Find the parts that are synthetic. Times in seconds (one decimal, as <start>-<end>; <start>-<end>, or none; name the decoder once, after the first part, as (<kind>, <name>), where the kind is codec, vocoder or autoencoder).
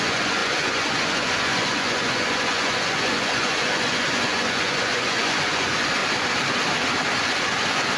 0.0-6.0 (vocoder, Vocos); 7.2-8.0